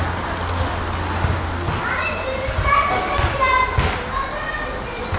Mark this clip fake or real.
real